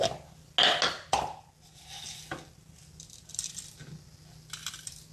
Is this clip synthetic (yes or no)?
no